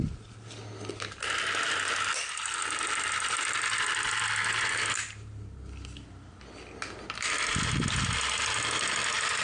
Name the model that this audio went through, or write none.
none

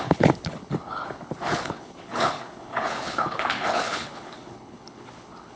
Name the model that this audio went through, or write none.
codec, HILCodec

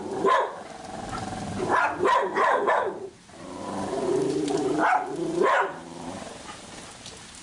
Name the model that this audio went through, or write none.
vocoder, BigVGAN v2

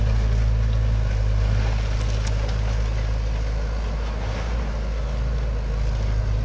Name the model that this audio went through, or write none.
none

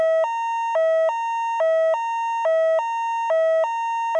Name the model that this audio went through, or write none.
none